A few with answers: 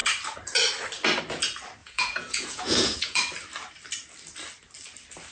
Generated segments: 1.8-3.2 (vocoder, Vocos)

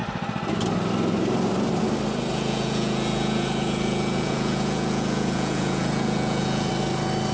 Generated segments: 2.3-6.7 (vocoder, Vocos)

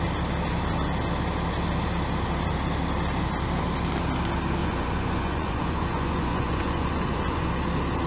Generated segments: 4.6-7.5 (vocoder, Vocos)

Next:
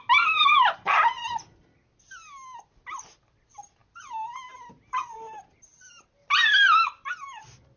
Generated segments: none